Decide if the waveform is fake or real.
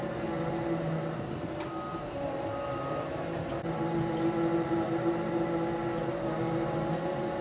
real